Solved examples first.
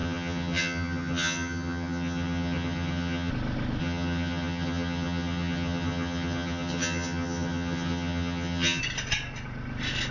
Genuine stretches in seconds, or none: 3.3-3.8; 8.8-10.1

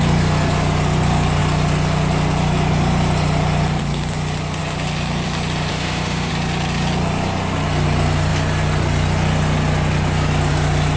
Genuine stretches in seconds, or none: 0.0-5.7; 6.3-11.0

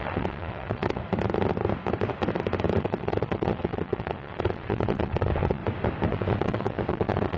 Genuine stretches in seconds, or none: 1.0-2.8; 5.6-6.1